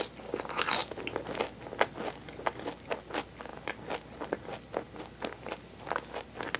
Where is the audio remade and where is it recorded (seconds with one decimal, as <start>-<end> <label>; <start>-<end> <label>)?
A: 0.0-6.6 recorded